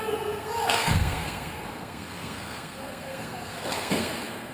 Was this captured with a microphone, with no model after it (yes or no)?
no